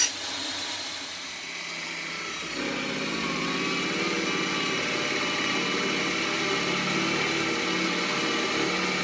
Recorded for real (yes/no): yes